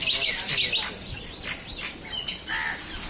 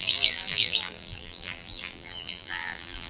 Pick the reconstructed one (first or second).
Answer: second